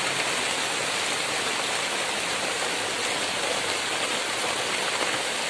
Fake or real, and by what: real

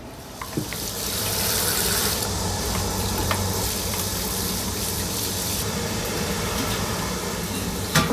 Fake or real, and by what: fake, vocoder, BigVGAN v2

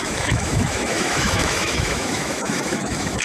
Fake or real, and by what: fake, autoencoder, DAC-VAE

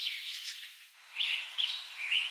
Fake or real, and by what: fake, autoencoder, DAC-VAE